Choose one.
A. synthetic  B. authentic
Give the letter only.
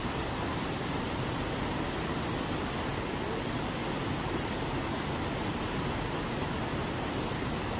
B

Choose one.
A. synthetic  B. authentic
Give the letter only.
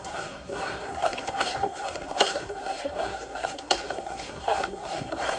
A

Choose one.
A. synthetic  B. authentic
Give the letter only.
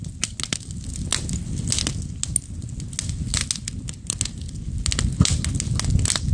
B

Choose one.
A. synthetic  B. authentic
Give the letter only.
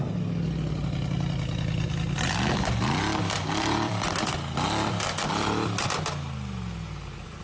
B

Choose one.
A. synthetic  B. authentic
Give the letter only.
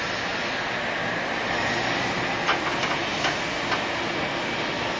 B